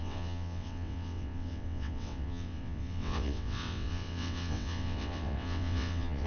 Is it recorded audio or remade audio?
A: remade